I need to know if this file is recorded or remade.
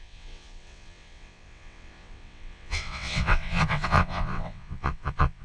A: remade